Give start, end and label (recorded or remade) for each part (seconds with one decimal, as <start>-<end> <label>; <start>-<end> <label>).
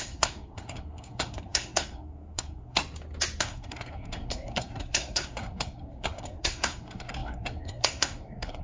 0.0-2.8 remade; 2.8-3.4 recorded; 3.4-8.6 remade